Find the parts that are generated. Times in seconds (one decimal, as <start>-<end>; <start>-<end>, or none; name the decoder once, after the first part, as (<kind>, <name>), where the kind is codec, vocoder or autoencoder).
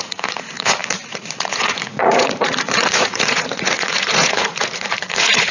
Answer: 0.0-5.5 (vocoder, Vocos)